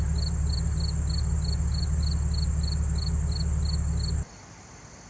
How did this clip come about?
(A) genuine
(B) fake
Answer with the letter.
A